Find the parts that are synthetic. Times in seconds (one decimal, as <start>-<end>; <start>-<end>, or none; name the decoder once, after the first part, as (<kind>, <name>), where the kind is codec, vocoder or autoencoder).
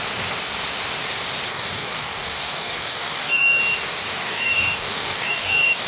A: 1.5-3.6 (codec, DAC); 4.1-5.9